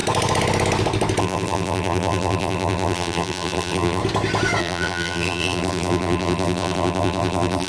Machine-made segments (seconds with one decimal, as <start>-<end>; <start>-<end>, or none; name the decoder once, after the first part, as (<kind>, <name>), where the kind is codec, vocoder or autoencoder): 1.2-4.0 (vocoder, BigVGAN v2); 4.6-7.7